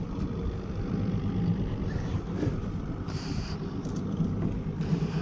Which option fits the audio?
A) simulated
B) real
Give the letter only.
A